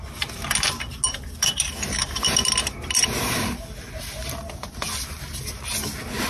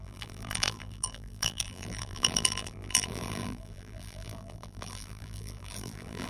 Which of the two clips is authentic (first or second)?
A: first